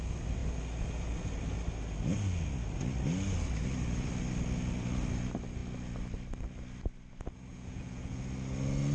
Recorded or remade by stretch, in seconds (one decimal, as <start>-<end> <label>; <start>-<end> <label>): 0.0-7.5 recorded; 7.5-8.2 remade; 8.2-8.9 recorded